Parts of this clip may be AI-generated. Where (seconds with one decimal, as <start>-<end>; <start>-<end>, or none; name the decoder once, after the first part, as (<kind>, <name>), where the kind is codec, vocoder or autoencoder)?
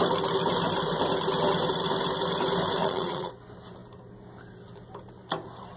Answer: 2.8-3.3 (vocoder, Vocos)